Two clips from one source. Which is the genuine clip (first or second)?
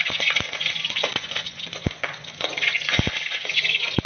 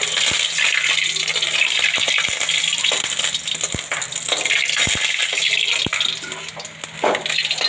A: second